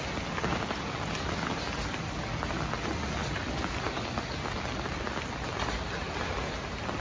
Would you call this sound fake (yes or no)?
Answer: no